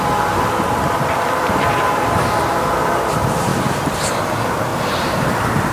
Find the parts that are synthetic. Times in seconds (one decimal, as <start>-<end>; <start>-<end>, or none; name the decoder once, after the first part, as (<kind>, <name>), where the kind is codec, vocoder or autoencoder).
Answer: 3.5-4.2 (vocoder, BigVGAN v2); 4.7-5.7